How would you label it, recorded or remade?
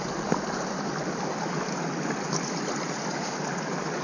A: recorded